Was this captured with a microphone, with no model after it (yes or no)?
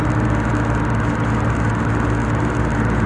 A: yes